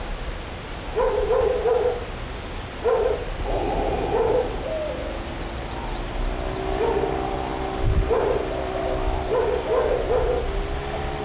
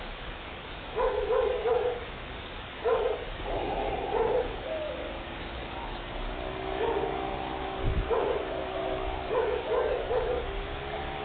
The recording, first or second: first